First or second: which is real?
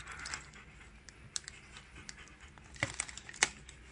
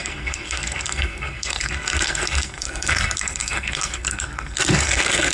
first